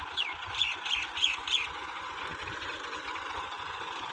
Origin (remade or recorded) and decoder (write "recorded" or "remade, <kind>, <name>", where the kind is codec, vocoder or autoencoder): remade, vocoder, Vocos